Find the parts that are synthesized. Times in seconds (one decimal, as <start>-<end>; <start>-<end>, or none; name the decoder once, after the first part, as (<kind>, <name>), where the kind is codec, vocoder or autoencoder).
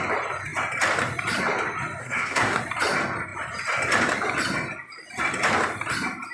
2.0-2.6 (codec, SNAC)